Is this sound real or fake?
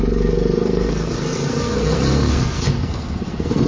fake